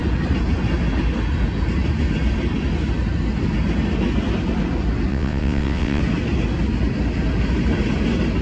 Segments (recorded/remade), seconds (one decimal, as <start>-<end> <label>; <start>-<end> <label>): 0.0-5.1 recorded; 5.1-6.0 remade; 6.0-8.4 recorded